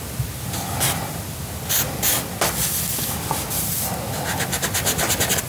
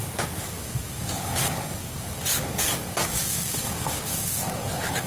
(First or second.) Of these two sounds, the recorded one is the first